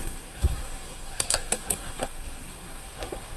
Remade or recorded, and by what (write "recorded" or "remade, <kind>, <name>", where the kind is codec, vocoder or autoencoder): remade, codec, SNAC